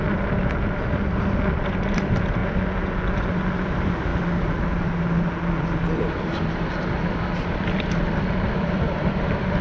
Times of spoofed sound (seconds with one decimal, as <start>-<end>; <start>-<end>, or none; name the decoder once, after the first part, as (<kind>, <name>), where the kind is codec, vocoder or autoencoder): 0.0-2.4 (vocoder, BigVGAN v2); 3.2-4.1; 6.2-9.6